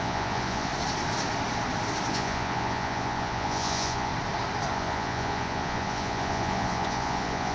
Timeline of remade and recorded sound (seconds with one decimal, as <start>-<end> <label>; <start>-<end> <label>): 0.0-0.7 remade; 0.7-2.1 recorded; 2.1-4.1 remade; 4.1-4.7 recorded; 4.7-7.5 remade